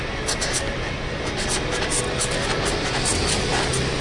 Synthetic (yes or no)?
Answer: no